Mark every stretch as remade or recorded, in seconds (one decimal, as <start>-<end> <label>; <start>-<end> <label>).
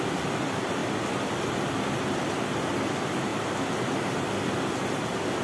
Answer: 0.0-5.4 recorded